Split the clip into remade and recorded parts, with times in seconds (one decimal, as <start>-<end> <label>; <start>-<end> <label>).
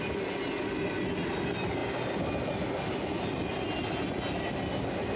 0.0-5.2 recorded